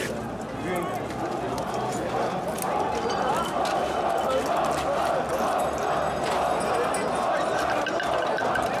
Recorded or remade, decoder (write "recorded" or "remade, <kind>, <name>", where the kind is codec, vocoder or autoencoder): recorded